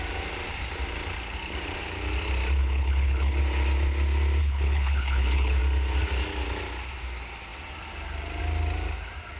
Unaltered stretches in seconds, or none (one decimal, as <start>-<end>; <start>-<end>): 0.0-2.6; 3.4-4.4; 5.6-9.4